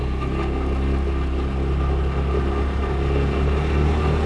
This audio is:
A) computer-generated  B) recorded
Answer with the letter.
B